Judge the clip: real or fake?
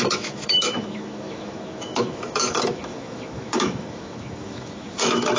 fake